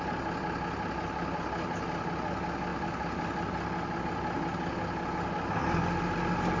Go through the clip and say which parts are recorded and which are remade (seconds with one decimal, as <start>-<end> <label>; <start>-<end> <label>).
0.0-6.6 recorded